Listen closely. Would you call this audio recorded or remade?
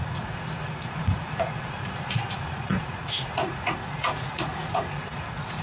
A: remade